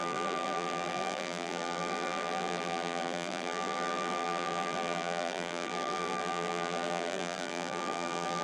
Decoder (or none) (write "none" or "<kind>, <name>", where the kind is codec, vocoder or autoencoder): vocoder, BigVGAN v2